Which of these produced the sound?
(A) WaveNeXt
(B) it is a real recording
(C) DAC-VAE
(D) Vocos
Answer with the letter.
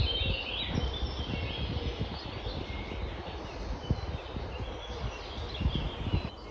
B